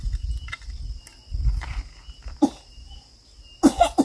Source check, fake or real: real